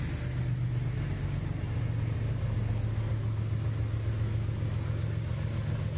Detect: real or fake real